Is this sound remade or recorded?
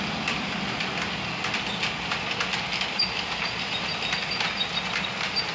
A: recorded